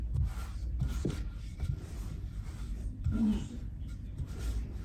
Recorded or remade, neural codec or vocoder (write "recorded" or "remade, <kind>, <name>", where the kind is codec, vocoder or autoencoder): remade, vocoder, BigVGAN v2